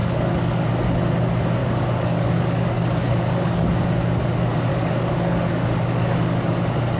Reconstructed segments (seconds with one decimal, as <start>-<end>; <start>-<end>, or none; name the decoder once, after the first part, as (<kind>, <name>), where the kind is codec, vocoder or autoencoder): 0.0-0.7 (codec, DAC); 1.6-3.7; 4.7-7.0